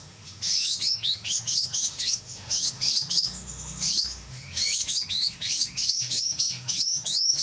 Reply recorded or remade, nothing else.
remade